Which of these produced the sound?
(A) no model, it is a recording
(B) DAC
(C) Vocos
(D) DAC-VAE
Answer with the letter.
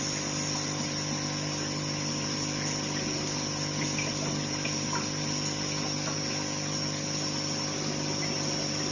A